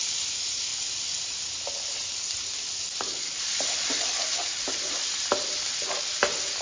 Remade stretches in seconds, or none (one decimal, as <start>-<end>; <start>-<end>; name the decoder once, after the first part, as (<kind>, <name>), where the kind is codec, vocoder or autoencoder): none